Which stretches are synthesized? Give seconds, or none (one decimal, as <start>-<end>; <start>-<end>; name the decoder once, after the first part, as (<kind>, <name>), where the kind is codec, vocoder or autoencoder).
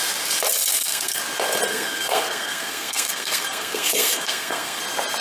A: 0.7-1.2 (codec, SNAC); 1.7-4.8